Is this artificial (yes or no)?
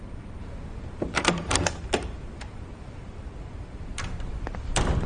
yes